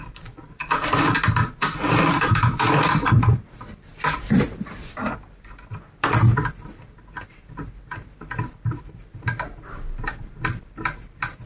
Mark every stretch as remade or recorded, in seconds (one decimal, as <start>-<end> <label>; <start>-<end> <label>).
0.0-11.5 remade